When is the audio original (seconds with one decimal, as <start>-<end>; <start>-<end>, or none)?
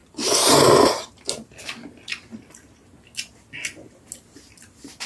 0.9-5.1